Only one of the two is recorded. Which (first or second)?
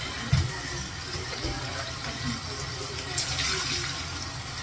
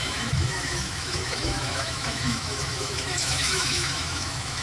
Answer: first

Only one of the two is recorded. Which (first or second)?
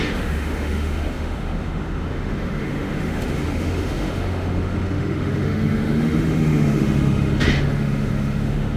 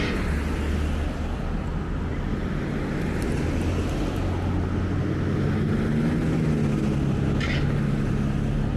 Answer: second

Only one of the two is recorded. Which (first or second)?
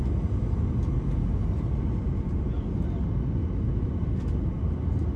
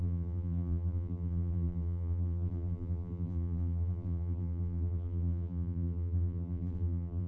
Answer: first